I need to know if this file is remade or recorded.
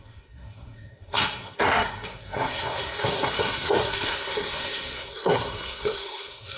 remade